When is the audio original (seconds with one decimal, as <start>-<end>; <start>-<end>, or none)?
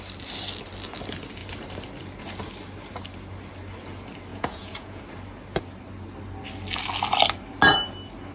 0.0-4.3; 5.0-8.3